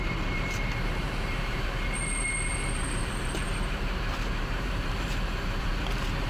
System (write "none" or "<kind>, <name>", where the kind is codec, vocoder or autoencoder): vocoder, BigVGAN v2